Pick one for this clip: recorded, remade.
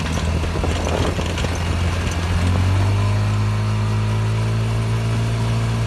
recorded